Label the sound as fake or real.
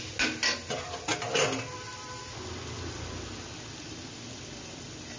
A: real